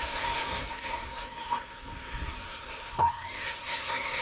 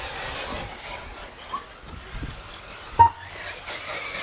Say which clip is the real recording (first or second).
second